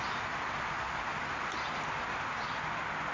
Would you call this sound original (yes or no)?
yes